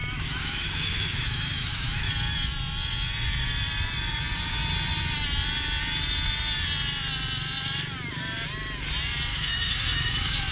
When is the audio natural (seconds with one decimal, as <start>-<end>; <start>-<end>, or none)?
2.1-9.3